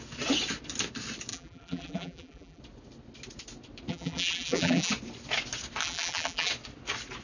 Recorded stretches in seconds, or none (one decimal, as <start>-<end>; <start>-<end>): 0.0-1.3; 2.6-3.9; 4.9-5.8; 6.5-7.2